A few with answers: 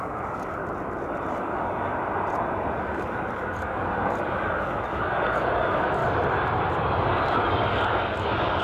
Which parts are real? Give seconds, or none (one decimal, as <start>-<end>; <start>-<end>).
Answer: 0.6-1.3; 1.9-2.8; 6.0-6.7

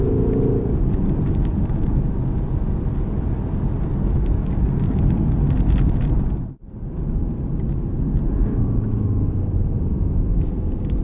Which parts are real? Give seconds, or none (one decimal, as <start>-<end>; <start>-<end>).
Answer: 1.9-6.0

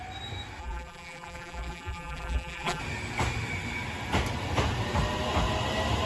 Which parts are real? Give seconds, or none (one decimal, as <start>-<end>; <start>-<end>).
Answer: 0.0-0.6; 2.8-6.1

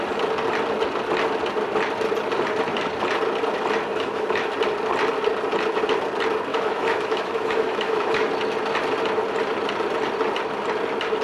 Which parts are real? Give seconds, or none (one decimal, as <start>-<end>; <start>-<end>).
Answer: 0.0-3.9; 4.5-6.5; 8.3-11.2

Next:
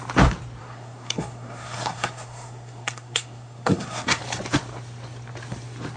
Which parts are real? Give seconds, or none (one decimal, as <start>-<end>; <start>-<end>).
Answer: 0.0-0.6; 4.2-6.0

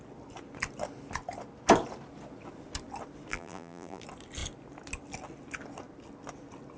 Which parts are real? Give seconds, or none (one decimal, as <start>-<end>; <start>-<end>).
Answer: 0.0-3.3; 4.0-6.8

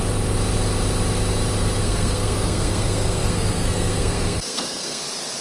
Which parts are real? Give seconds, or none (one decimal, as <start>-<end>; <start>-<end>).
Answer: 0.0-1.8; 5.0-5.4